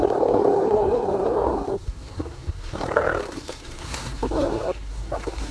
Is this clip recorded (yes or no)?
no